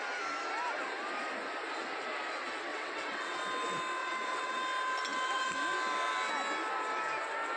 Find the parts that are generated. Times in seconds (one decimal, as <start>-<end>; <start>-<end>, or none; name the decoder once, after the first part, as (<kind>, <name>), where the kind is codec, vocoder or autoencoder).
2.7-3.4 (vocoder, WaveNeXt); 4.0-4.6